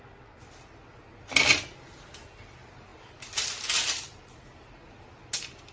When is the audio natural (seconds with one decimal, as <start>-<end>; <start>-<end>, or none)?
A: 0.0-5.7